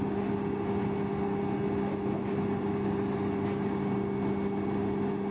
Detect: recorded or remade recorded